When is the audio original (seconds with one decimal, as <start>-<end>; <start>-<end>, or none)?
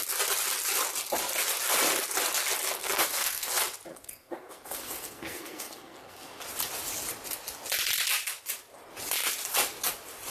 0.0-2.8; 3.5-3.9; 6.4-10.3